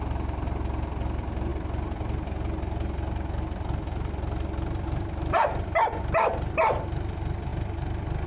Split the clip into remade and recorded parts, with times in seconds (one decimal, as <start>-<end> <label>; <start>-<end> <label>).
0.0-7.5 recorded; 7.5-8.3 remade